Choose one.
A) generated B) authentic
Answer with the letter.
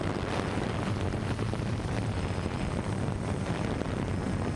B